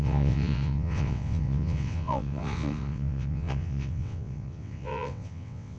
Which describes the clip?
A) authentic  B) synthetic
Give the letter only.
B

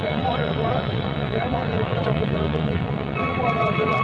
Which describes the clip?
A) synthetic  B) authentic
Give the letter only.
A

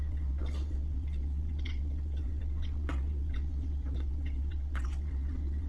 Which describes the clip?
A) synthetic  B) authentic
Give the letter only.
A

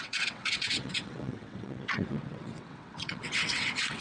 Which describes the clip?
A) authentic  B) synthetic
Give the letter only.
B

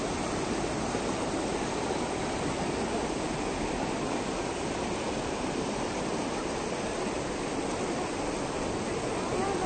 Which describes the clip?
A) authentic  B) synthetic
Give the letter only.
A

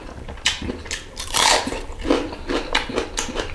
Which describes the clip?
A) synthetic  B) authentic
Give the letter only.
B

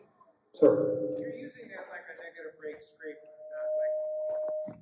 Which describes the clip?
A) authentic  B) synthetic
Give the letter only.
A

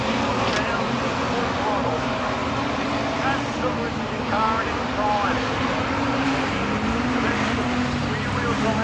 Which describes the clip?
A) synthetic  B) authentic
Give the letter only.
B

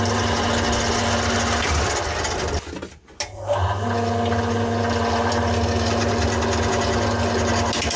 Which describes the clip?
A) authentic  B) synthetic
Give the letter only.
A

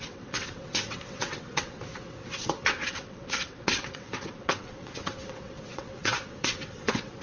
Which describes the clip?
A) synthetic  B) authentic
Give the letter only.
A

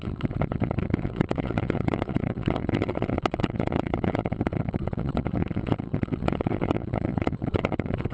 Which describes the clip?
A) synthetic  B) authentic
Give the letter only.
A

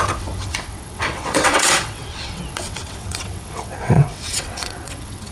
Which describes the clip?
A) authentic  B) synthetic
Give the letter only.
B